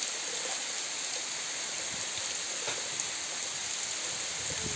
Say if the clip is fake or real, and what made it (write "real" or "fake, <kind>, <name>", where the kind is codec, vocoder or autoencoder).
real